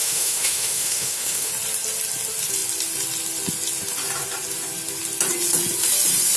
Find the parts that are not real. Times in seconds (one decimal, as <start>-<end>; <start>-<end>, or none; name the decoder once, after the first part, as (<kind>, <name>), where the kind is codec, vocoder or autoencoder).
0.0-1.5 (autoencoder, DAC-VAE)